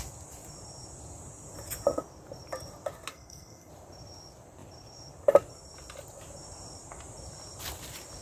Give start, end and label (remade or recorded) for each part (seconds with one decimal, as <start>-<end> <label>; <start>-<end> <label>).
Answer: 0.0-3.1 recorded; 3.1-3.7 remade; 3.7-8.2 recorded